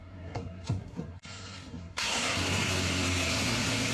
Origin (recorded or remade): remade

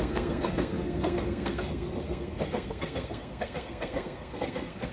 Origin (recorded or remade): remade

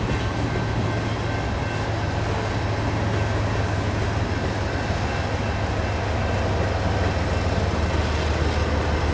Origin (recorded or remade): recorded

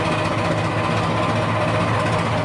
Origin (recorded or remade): recorded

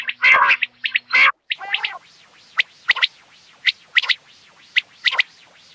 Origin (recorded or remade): recorded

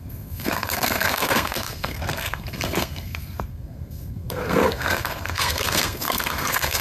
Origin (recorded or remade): remade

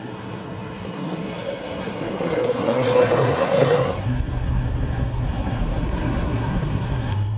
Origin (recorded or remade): remade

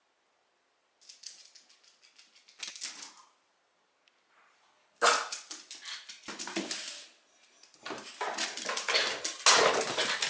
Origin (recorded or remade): recorded